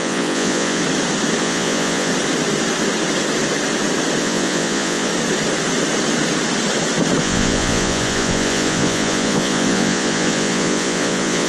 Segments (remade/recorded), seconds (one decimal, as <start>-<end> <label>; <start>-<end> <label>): 0.0-0.8 remade; 0.8-1.4 recorded; 1.4-2.1 remade; 2.1-4.2 recorded; 4.2-5.1 remade; 5.1-7.2 recorded; 7.2-11.5 remade